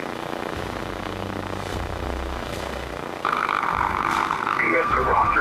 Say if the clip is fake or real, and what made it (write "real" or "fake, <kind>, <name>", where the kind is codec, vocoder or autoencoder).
fake, codec, SNAC